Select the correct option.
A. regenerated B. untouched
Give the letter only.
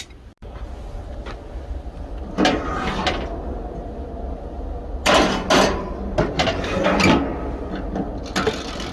B